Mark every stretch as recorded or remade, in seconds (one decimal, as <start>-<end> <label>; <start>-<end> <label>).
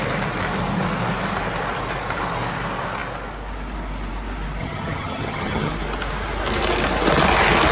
0.0-4.6 recorded; 4.6-5.7 remade; 5.7-7.7 recorded